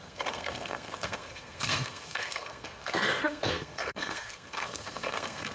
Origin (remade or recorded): remade